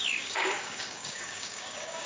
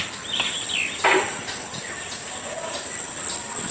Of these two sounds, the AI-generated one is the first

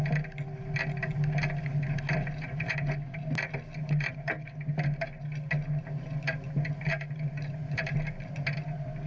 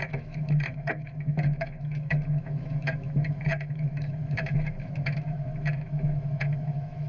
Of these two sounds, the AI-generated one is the second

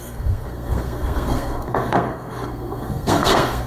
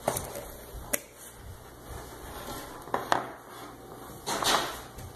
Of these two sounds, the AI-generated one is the first